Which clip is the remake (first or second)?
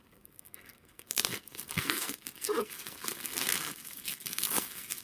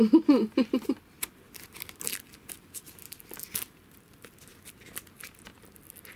first